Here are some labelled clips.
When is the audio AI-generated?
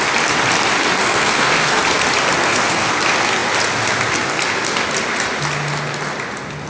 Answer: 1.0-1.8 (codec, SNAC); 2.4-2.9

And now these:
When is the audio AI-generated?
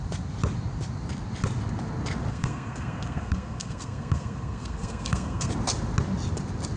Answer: 2.3-5.5 (codec, SNAC)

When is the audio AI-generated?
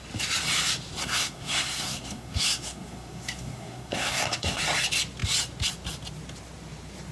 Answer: 1.0-4.6 (codec, SNAC)